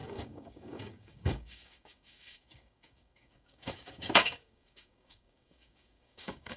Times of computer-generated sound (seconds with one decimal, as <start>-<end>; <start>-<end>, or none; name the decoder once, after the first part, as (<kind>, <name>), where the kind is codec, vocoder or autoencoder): 0.0-6.6 (codec, DAC)